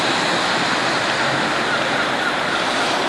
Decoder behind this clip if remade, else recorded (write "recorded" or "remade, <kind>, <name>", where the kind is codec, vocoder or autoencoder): recorded